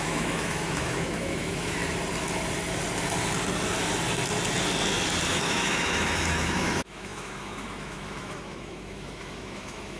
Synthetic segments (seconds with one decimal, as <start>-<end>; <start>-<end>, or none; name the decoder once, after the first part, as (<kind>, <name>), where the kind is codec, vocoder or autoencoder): 0.0-1.8 (autoencoder, DAC-VAE); 5.3-10.0

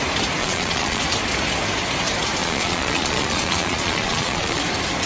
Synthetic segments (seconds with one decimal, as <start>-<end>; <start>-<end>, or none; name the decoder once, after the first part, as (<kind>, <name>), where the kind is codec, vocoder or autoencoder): 0.4-1.0 (vocoder, Vocos); 2.4-4.6

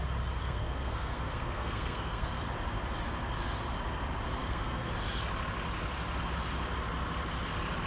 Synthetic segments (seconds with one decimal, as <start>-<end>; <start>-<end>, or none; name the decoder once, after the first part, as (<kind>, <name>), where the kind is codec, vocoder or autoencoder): 0.4-2.4 (codec, SNAC); 4.4-4.9

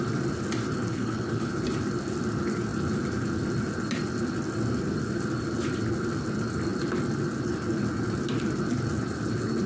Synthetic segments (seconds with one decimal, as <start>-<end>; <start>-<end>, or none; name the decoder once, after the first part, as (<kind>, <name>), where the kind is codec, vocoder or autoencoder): 0.9-1.6 (codec, HILCodec)